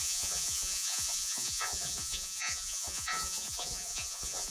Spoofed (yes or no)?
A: yes